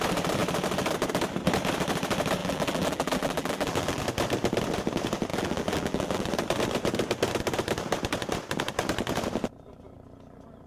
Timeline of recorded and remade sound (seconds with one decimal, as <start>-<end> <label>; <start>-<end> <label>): 0.0-2.4 recorded; 2.4-4.0 remade; 4.0-5.3 recorded; 5.3-6.3 remade; 6.3-10.7 recorded